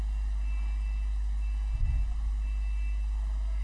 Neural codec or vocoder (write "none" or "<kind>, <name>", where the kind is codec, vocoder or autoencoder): none